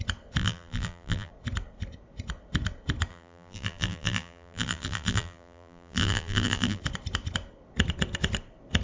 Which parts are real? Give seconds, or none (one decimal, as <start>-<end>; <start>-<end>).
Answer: 0.0-0.4; 1.3-3.1; 6.8-8.8